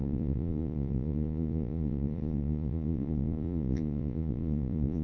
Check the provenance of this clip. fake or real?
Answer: fake